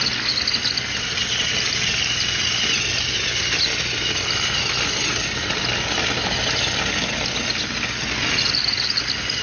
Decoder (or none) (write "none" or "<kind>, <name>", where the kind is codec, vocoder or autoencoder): none